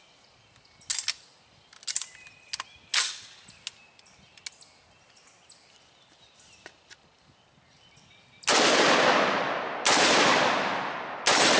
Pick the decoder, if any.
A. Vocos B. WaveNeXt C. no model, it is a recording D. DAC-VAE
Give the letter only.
C